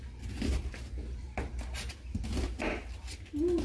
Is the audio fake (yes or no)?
no